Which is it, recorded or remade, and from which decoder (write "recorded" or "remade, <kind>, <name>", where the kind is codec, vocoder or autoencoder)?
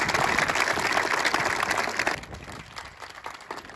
recorded